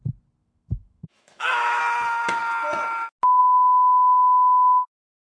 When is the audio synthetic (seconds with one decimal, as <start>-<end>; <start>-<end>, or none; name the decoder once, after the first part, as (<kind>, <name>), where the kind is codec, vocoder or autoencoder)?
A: 0.4-1.8 (autoencoder, DAC-VAE)